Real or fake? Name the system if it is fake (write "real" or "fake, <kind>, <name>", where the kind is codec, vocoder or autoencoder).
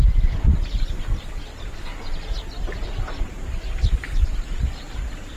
real